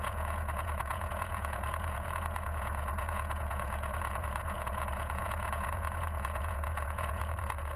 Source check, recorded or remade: remade